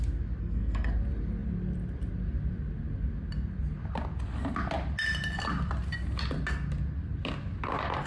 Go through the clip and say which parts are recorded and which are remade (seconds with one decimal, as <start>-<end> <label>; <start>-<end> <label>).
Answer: 0.0-0.4 recorded; 0.4-0.9 remade; 0.9-8.1 recorded